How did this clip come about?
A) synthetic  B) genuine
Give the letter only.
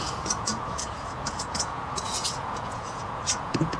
A